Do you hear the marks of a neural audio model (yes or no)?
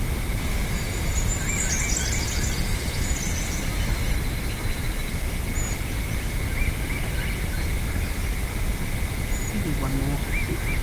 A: no